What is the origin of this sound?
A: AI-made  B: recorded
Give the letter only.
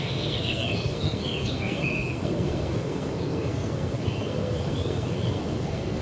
A